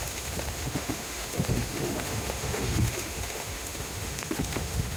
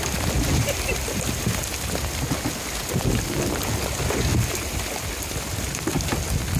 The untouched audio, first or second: second